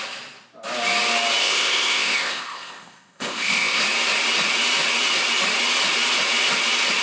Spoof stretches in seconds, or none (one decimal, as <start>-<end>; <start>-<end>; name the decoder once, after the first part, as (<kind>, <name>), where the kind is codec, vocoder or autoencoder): 1.4-3.8 (codec, ZipCodec)